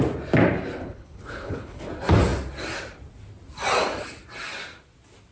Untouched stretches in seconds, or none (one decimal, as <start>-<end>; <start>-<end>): 0.0-0.8; 1.9-5.3